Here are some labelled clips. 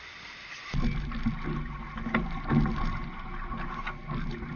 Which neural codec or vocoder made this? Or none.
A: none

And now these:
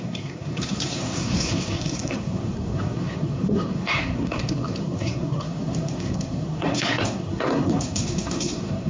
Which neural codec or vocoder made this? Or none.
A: codec, SNAC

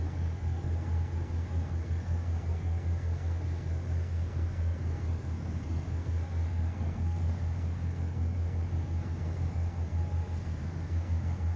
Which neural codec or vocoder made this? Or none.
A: codec, SNAC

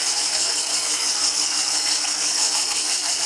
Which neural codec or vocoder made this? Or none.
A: codec, SNAC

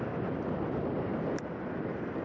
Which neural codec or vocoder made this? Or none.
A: none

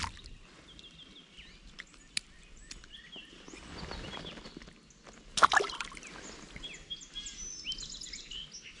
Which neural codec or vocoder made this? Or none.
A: none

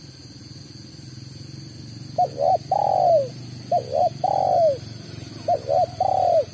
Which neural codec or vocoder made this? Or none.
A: none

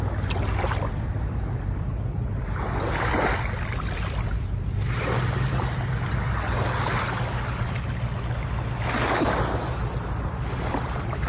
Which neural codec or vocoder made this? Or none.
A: none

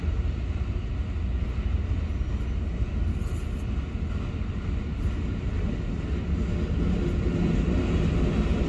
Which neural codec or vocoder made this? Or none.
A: none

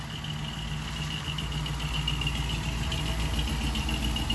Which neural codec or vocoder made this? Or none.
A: none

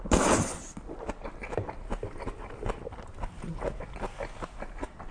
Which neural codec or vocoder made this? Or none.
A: none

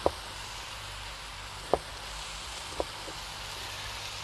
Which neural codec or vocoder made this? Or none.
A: none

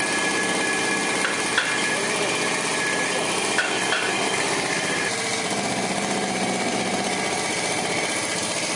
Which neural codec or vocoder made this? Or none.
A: none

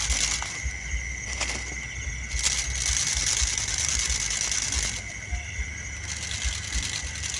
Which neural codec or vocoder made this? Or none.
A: none